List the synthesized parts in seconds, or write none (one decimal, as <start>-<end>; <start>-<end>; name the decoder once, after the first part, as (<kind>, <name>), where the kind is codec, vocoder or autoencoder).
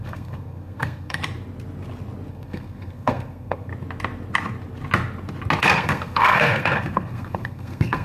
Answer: 0.0-1.2 (codec, SNAC); 2.3-3.7; 5.6-8.0